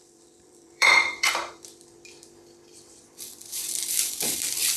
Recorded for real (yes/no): no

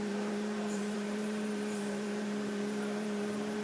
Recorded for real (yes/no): no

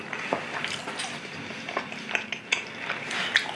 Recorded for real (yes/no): yes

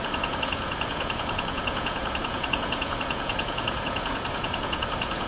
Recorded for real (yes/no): no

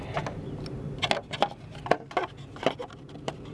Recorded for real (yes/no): yes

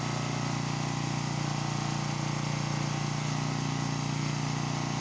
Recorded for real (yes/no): yes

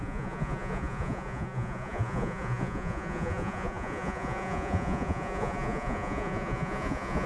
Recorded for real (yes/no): no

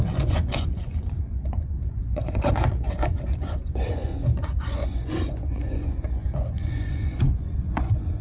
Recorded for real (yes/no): no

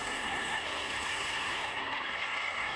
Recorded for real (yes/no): no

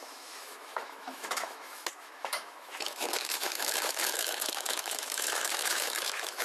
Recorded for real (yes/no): no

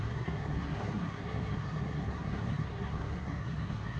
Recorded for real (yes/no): no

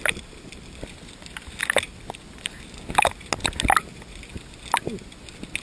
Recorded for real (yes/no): yes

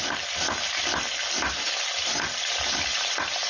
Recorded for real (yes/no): yes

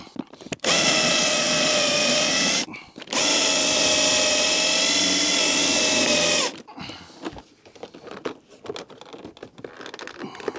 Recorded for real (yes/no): yes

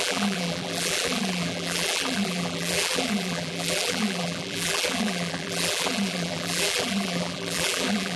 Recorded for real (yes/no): no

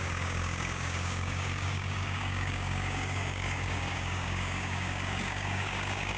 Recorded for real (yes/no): no